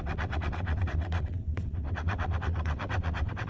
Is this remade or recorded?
remade